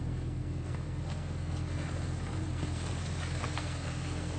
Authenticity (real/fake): fake